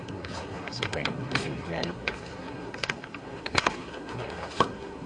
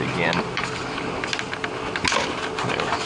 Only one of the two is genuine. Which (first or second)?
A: second